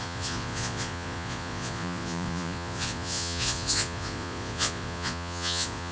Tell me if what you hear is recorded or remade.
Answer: remade